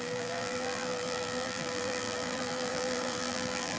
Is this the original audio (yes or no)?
no